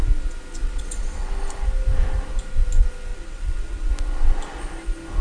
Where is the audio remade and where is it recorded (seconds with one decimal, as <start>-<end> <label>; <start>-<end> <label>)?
0.0-0.6 recorded; 0.6-1.3 remade; 1.3-3.1 recorded; 3.1-3.9 remade; 3.9-5.2 recorded